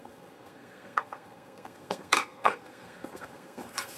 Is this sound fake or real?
fake